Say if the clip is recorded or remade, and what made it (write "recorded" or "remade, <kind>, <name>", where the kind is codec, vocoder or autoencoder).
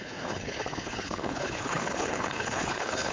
remade, codec, HILCodec